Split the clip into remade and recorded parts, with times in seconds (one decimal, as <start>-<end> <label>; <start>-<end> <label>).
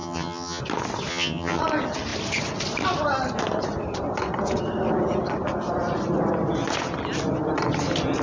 0.0-0.6 remade; 0.6-1.1 recorded; 1.1-1.6 remade; 1.6-8.2 recorded